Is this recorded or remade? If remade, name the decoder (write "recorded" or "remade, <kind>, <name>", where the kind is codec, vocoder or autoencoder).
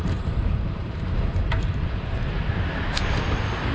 remade, vocoder, BigVGAN v2